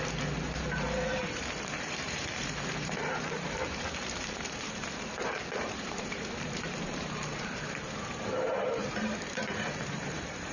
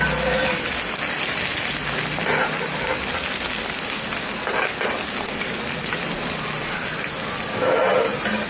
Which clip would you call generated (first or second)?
first